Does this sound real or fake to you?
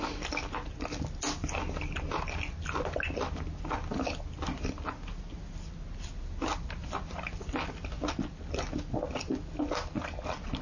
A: real